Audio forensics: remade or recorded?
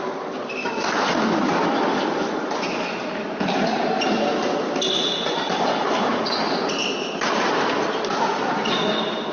recorded